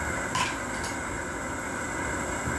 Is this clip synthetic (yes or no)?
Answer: no